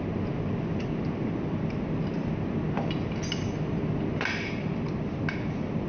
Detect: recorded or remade recorded